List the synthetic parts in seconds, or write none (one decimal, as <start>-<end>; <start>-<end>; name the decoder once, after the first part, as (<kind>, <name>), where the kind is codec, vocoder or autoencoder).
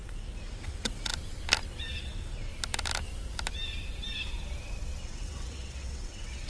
0.0-1.1 (vocoder, WaveNeXt); 2.0-2.5; 5.0-6.5